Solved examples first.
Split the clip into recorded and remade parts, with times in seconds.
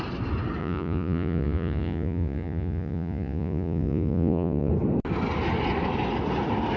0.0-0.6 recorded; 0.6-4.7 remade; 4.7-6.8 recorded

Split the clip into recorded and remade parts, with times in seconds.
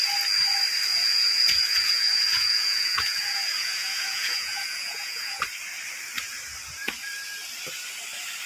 0.0-0.9 recorded; 0.9-5.4 remade; 5.4-8.5 recorded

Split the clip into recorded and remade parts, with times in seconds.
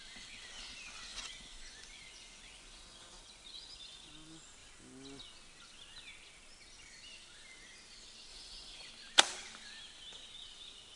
0.0-1.1 recorded; 1.1-4.1 remade; 4.1-8.3 recorded; 8.3-8.9 remade; 8.9-11.0 recorded